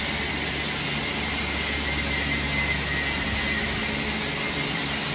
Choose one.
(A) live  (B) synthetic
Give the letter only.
A